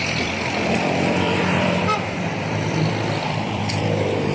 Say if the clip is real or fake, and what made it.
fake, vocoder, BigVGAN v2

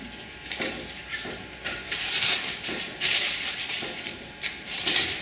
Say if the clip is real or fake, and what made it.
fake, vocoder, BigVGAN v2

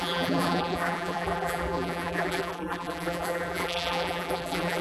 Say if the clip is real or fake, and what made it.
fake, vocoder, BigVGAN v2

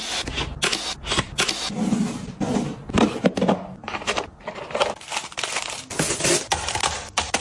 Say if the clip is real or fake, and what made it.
real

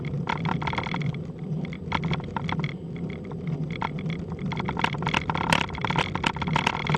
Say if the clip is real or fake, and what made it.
fake, vocoder, BigVGAN v2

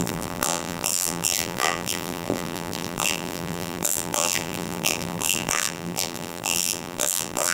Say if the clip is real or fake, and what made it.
fake, vocoder, BigVGAN v2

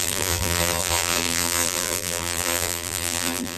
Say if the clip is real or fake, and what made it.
fake, vocoder, BigVGAN v2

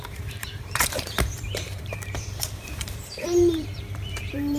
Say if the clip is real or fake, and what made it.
fake, vocoder, BigVGAN v2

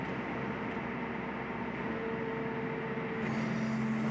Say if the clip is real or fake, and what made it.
real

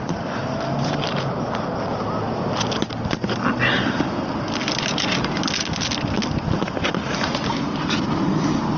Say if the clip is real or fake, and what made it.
real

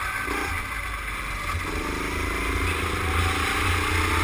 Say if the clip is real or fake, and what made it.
real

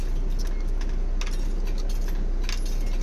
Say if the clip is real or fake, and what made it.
real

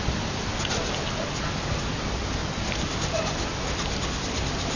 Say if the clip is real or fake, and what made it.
fake, vocoder, BigVGAN v2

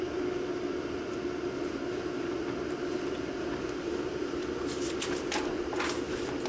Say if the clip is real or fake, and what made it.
real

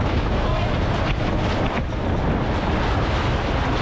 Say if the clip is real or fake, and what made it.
real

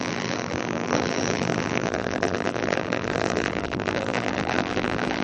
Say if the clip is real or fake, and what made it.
fake, vocoder, BigVGAN v2